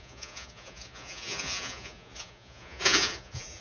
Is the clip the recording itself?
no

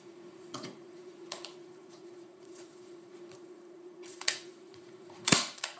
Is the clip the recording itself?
no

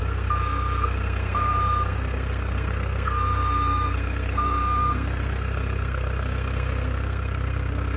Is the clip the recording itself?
no